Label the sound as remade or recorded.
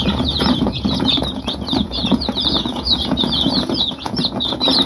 remade